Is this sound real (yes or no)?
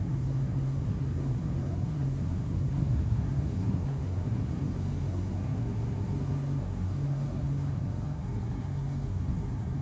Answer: no